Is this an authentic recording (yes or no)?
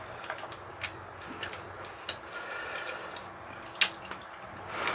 yes